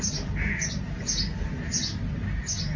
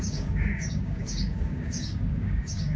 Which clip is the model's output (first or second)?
second